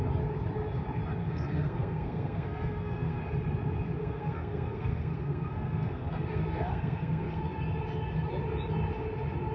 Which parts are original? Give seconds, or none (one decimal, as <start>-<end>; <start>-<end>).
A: 0.0-1.2; 3.2-4.0; 7.6-9.5